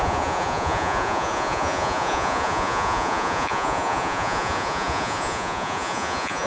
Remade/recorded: remade